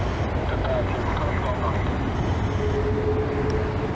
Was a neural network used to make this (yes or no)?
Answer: no